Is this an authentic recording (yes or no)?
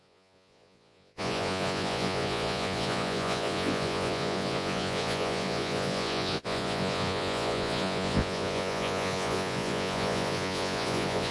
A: no